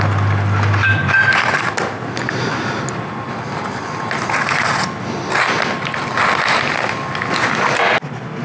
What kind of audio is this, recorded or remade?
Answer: recorded